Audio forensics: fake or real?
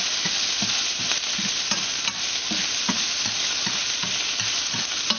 real